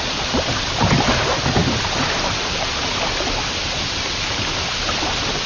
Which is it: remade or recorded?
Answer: recorded